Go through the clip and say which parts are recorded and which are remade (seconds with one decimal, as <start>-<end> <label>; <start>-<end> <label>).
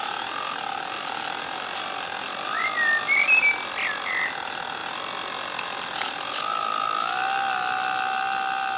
0.0-8.8 recorded